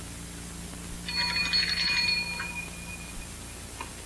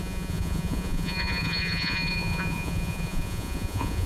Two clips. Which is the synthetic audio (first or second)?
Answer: second